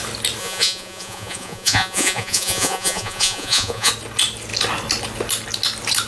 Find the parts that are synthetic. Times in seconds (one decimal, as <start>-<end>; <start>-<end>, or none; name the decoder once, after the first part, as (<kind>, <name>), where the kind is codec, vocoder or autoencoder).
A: 0.4-3.9 (vocoder, Vocos)